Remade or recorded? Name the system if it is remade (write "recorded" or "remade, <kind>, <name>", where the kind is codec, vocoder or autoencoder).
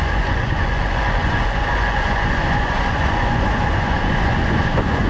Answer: remade, vocoder, Vocos